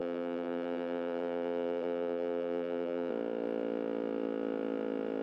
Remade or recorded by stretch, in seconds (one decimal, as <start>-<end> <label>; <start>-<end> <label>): 0.0-3.1 remade; 3.1-5.2 recorded